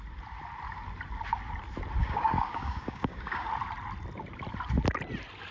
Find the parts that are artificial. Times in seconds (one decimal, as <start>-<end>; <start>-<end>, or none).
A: 2.0-3.5